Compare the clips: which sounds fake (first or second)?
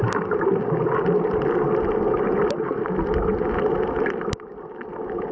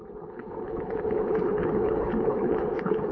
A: second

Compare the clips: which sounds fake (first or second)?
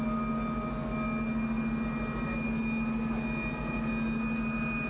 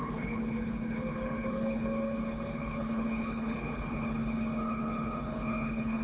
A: second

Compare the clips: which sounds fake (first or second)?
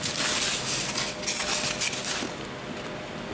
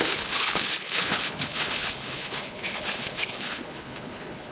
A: second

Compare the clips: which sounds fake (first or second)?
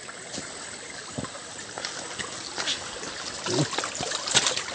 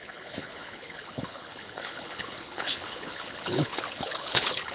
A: second